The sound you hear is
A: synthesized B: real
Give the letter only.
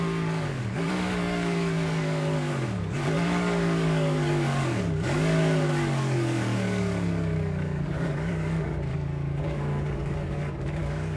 A